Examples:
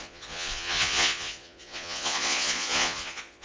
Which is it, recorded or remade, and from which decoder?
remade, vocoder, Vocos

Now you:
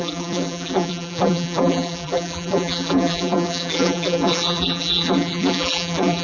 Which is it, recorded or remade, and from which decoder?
remade, vocoder, BigVGAN v2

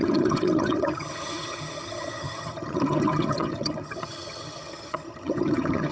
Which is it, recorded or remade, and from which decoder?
remade, vocoder, HiFi-GAN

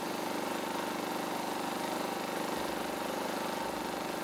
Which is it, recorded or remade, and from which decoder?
recorded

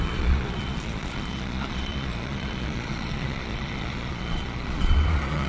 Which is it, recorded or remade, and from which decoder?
remade, vocoder, Vocos